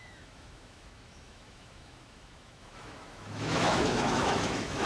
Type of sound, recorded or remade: remade